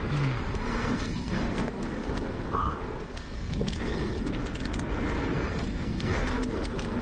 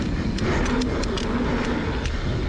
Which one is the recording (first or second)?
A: second